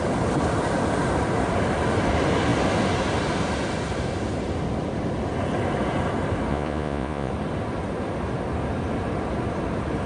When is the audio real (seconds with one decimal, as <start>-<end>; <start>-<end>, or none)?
0.0-6.5; 7.3-10.1